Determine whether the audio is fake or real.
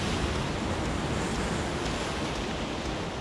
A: real